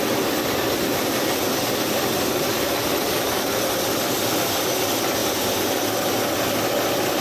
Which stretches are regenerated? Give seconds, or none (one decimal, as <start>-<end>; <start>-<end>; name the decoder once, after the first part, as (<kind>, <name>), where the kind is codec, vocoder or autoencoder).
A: none